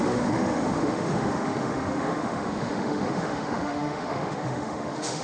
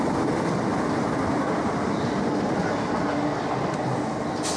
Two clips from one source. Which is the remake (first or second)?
first